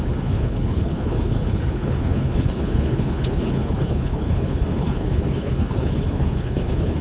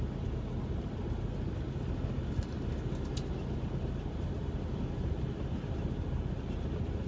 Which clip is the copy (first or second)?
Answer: first